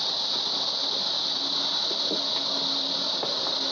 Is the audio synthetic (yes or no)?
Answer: no